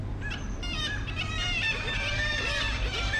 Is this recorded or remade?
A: remade